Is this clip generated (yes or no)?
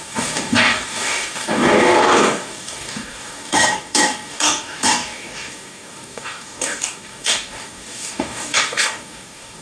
yes